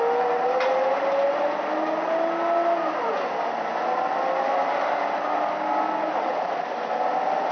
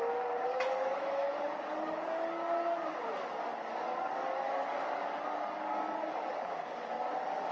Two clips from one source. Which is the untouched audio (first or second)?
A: first